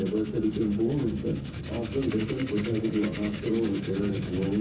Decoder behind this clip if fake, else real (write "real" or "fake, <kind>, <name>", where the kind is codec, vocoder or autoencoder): fake, codec, DAC